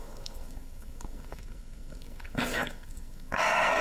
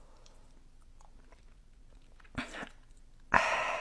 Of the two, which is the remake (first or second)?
first